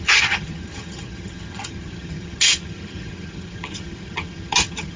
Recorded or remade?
remade